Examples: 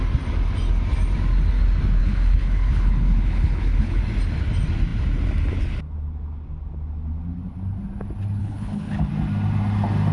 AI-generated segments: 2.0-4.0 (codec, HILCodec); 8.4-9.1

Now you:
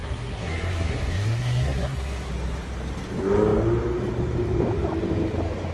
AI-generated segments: 0.0-2.3 (codec, SNAC)

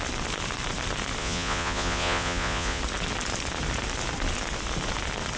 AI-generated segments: 1.2-2.8 (vocoder, Vocos)

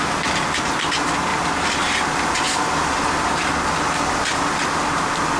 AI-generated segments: none